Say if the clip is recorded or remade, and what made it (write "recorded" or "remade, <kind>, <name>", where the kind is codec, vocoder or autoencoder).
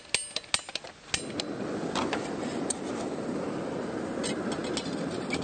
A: recorded